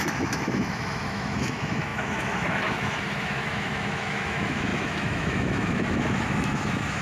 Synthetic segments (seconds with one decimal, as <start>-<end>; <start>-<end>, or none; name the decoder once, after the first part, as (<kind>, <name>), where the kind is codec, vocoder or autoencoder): 0.0-7.0 (autoencoder, DAC-VAE)